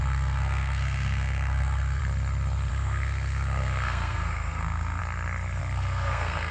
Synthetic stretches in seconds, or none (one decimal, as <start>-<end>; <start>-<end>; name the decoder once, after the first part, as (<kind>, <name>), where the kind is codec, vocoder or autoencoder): 0.0-2.0 (codec, SNAC); 2.7-5.0; 5.6-6.5